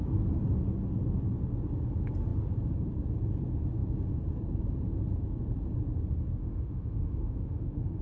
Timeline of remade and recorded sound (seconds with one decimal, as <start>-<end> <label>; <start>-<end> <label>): 0.0-6.4 recorded; 6.4-8.0 remade